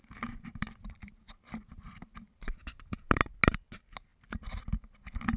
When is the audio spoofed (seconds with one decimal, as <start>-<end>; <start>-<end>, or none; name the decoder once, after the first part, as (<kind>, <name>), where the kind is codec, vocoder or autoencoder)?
0.0-3.2 (vocoder, BigVGAN v2)